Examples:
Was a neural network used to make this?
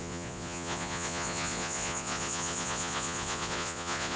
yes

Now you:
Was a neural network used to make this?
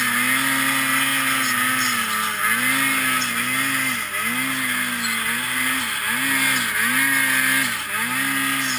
no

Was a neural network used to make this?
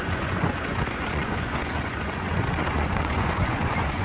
yes